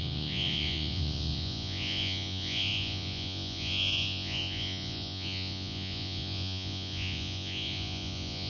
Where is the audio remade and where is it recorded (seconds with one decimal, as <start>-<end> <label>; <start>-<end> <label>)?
0.0-8.5 remade